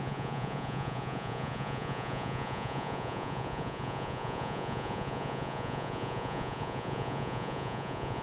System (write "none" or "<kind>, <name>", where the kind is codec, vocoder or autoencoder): vocoder, Vocos